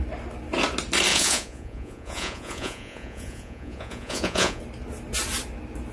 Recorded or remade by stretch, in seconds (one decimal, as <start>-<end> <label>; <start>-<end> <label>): 0.0-1.1 recorded; 1.1-4.6 remade; 4.6-5.9 recorded